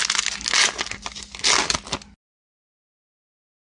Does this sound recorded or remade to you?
recorded